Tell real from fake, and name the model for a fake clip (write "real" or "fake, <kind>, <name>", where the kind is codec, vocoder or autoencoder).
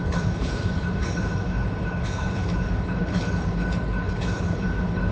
fake, codec, HILCodec